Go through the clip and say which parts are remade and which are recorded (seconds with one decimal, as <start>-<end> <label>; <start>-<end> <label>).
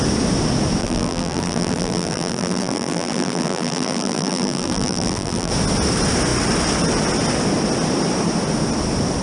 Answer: 0.0-0.8 recorded; 0.8-5.5 remade; 5.5-9.2 recorded